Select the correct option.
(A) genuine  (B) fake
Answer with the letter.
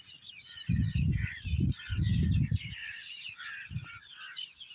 A